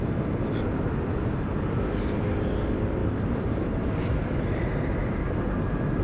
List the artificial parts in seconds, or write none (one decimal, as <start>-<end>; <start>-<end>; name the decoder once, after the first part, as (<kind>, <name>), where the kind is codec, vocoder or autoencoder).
0.7-1.5 (vocoder, BigVGAN v2)